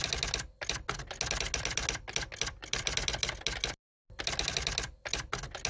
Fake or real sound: real